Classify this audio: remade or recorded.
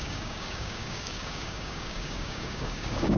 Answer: remade